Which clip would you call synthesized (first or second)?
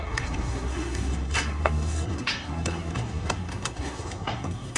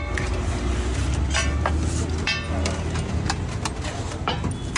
first